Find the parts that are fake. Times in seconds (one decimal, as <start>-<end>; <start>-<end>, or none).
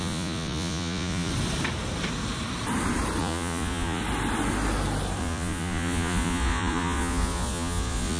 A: 0.0-1.3; 3.2-4.0; 5.2-8.2